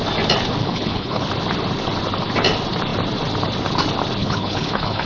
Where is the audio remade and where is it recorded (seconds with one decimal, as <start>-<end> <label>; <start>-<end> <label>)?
0.0-0.6 recorded; 0.6-1.3 remade; 1.3-4.2 recorded; 4.2-5.1 remade